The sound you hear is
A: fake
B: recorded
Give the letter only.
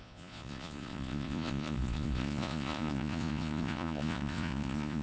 A